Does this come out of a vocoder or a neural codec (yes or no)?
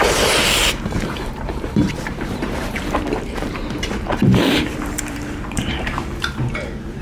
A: yes